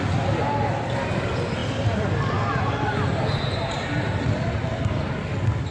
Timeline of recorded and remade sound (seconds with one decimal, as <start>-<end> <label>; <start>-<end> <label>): 0.0-5.7 recorded